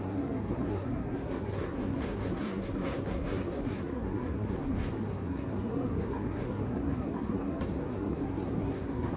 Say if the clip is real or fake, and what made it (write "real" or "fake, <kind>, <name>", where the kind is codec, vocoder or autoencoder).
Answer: fake, codec, SNAC